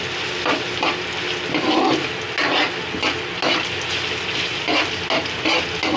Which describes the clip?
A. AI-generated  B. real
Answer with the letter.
B